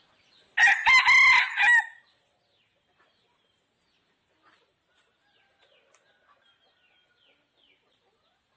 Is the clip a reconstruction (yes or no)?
no